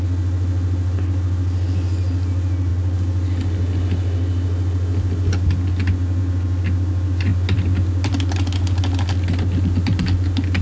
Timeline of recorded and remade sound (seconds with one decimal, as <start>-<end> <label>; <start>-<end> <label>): 0.0-10.6 recorded